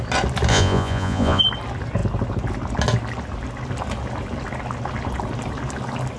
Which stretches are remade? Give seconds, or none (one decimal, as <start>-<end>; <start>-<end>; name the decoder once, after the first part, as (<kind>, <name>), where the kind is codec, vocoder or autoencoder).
0.5-1.4 (vocoder, Vocos)